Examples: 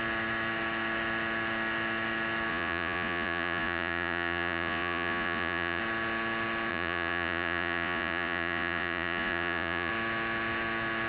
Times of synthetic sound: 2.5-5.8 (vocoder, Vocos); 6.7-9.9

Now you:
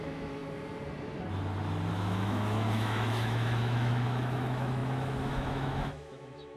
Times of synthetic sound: 0.0-0.4 (autoencoder, DAC-VAE); 1.9-6.6

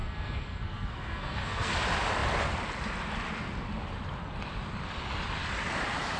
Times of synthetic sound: 0.0-1.7 (codec, SNAC)

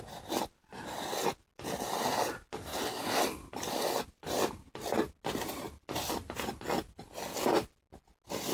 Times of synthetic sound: none

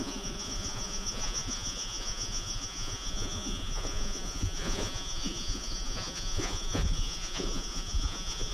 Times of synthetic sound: 0.0-8.5 (vocoder, Vocos)

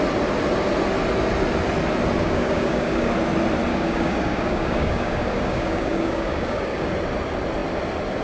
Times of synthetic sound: 2.2-3.1 (codec, DAC); 3.7-6.9